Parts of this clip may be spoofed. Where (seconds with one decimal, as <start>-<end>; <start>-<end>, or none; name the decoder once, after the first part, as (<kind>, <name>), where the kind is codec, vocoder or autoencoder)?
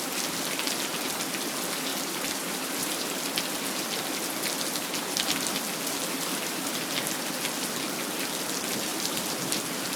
1.9-3.2 (vocoder, BigVGAN v2); 8.9-9.6